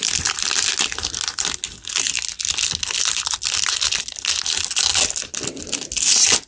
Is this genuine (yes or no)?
yes